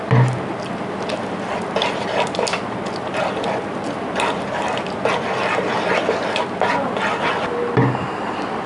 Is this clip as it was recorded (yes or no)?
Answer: yes